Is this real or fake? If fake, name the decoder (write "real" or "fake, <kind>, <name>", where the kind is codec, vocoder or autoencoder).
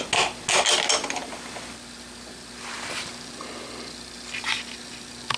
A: real